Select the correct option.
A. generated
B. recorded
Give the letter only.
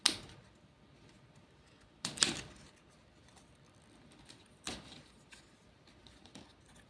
B